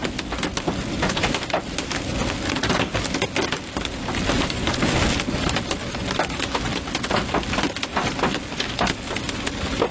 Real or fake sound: real